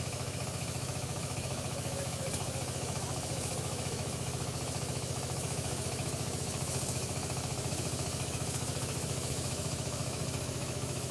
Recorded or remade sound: remade